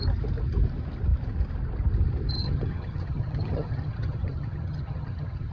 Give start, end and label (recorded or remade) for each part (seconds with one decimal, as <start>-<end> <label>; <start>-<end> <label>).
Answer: 0.0-2.4 recorded; 2.4-5.5 remade